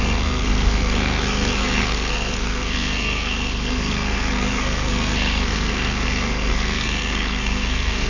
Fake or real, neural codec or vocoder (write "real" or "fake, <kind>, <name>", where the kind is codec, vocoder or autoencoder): fake, codec, SNAC